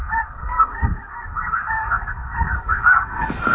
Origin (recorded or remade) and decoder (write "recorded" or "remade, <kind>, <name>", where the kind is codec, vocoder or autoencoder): remade, codec, SNAC